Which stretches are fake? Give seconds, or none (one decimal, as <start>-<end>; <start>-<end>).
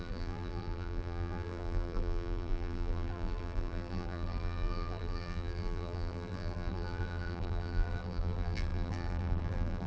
0.0-9.9